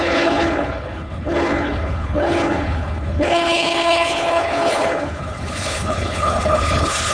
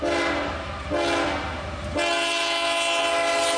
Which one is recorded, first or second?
second